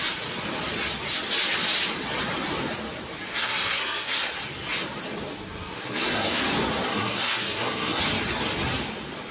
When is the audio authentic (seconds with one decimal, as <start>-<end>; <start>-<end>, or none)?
0.0-3.3; 4.3-5.3; 6.4-6.9; 8.0-9.3